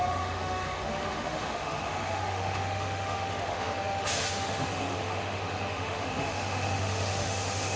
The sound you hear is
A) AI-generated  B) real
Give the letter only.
A